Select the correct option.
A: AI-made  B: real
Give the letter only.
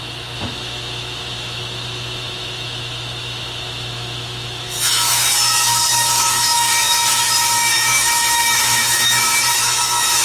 A